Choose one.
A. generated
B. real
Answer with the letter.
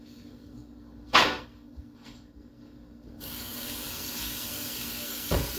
A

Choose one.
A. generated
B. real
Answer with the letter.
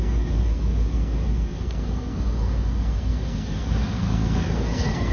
A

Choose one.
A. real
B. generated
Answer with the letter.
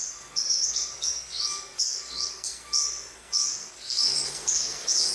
B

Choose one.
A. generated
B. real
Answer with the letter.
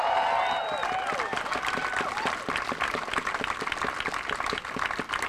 B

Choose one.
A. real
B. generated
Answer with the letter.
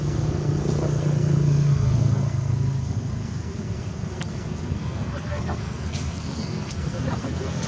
B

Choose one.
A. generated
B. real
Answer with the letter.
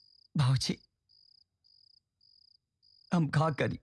B